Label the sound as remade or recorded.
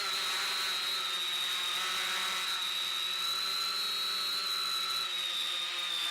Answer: recorded